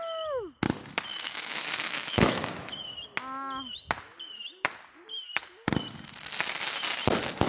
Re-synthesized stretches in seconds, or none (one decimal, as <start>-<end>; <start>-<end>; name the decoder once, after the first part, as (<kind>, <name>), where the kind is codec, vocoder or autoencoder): 1.1-2.8 (autoencoder, DAC-VAE)